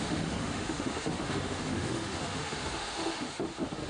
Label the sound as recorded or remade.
remade